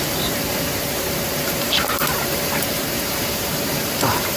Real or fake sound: fake